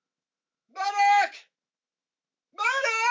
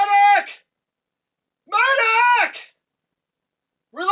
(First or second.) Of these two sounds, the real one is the second